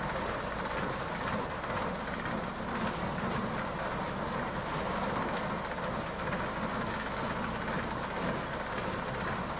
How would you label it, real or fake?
real